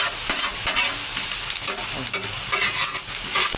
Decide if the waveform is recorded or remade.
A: recorded